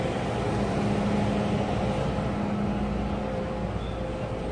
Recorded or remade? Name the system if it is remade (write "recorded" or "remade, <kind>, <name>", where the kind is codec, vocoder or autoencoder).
recorded